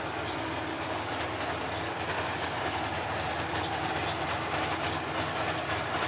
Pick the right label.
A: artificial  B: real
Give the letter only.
A